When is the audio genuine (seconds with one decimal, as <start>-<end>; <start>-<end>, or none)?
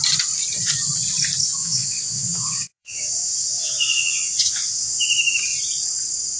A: 0.0-1.6; 5.0-6.4